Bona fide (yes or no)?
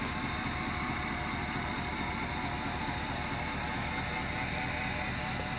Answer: yes